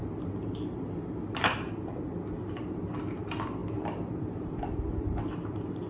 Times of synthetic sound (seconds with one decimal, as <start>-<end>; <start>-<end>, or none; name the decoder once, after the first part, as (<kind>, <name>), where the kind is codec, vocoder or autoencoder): none